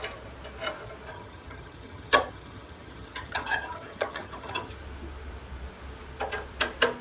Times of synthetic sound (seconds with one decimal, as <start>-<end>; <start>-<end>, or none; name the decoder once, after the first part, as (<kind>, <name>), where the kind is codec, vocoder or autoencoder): 1.1-4.7 (vocoder, HiFi-GAN)